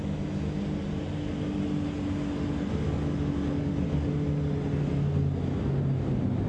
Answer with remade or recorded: recorded